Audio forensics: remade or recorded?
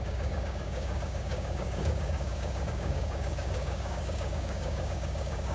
remade